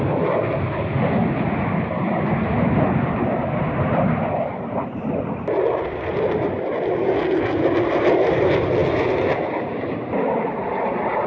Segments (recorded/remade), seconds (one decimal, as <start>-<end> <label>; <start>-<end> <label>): 0.0-11.3 recorded